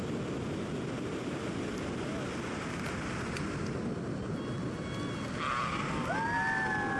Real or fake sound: real